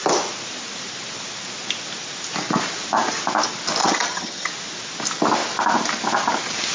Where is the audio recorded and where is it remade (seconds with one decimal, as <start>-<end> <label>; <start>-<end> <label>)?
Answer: 0.0-3.8 recorded; 3.8-4.5 remade; 4.5-6.7 recorded